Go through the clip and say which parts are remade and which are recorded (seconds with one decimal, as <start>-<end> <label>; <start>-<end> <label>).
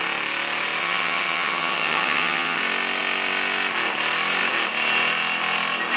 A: 0.0-0.8 recorded; 0.8-2.6 remade; 2.6-6.0 recorded